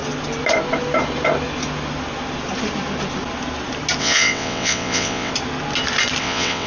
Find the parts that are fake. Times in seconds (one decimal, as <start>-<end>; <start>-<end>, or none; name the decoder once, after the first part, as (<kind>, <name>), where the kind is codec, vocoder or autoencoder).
4.0-5.3 (vocoder, WaveNeXt); 6.2-6.7

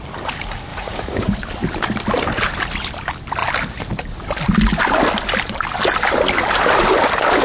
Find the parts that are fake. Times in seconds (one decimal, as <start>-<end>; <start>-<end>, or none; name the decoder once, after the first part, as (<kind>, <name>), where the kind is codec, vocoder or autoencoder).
0.7-1.3 (vocoder, Vocos)